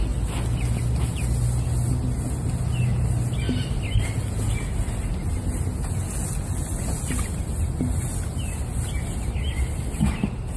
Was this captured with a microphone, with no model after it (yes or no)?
yes